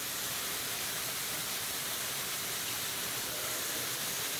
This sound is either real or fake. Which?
real